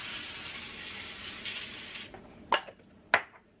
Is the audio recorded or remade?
recorded